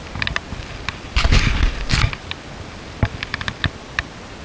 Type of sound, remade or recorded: recorded